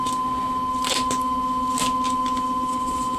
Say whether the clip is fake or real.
real